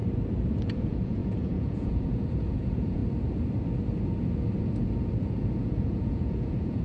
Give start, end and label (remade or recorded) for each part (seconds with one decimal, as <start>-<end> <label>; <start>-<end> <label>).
0.0-0.6 recorded; 0.6-3.0 remade; 3.0-5.2 recorded; 5.2-6.8 remade